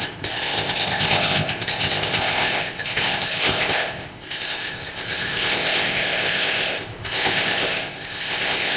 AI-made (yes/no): yes